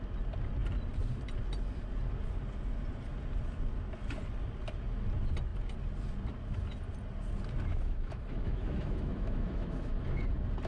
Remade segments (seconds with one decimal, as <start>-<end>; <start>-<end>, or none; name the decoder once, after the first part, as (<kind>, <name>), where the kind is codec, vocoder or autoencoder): 7.7-10.2 (autoencoder, DAC-VAE)